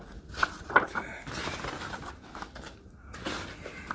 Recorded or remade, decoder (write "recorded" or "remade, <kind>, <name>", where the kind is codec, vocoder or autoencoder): recorded